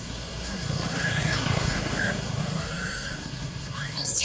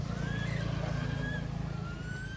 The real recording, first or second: second